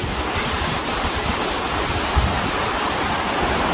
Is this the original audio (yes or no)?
yes